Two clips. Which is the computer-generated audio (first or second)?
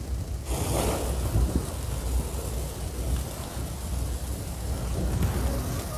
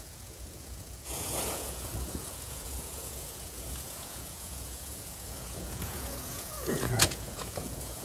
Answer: second